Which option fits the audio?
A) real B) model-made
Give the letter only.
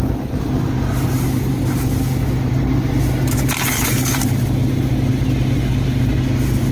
A